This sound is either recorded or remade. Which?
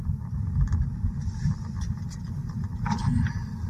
recorded